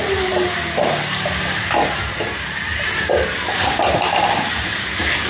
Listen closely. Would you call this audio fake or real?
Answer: real